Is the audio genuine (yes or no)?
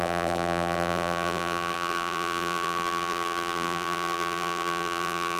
no